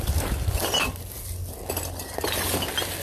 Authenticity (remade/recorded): recorded